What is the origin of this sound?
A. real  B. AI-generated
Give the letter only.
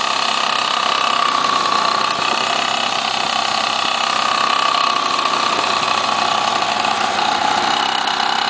A